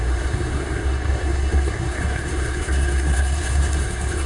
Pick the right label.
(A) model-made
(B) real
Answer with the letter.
A